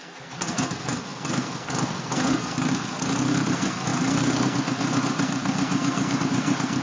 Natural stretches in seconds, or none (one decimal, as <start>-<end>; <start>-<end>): none

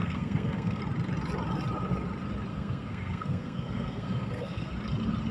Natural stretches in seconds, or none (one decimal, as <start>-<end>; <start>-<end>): 0.8-2.5; 4.7-5.3